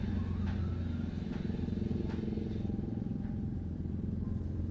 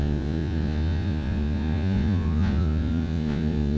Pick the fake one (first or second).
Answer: second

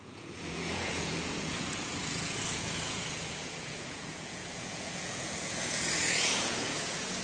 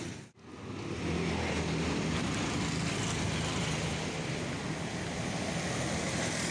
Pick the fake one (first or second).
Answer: first